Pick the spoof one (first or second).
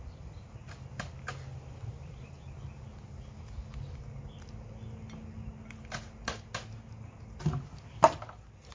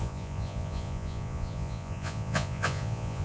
second